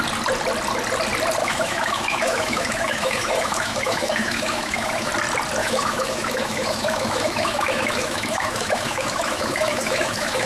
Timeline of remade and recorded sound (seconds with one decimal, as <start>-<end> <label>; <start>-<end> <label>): 0.0-1.4 recorded; 1.4-5.1 remade; 5.1-5.6 recorded; 5.6-10.5 remade